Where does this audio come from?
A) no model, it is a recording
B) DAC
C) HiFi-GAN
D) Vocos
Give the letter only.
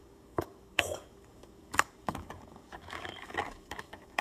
B